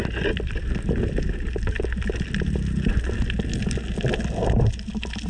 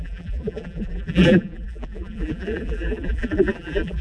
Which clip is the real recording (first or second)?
first